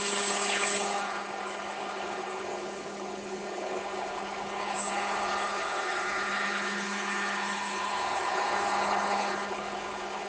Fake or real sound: fake